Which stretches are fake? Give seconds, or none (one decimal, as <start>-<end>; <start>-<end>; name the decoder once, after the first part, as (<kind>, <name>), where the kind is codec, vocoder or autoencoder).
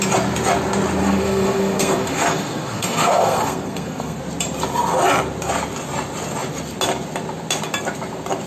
1.0-4.2 (codec, SNAC)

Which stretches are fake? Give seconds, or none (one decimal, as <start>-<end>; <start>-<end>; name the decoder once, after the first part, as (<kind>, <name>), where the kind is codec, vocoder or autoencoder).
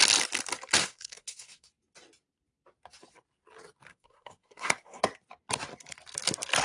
0.8-1.7 (codec, SNAC); 3.9-5.0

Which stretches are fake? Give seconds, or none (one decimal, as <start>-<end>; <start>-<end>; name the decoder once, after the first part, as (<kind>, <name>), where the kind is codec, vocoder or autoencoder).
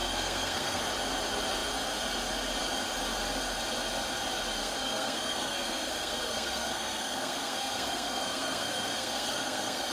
0.0-0.8 (codec, SNAC); 4.6-9.9